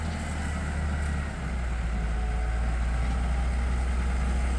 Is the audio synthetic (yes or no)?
no